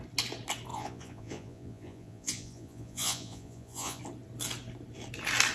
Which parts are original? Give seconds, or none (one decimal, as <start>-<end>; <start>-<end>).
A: 0.0-0.7; 4.0-5.5

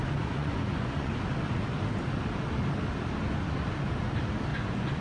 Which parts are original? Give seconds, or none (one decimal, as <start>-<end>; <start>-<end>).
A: 1.1-4.5